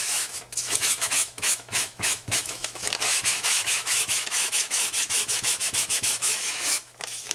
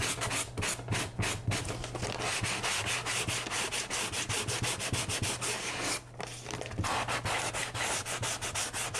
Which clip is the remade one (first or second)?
first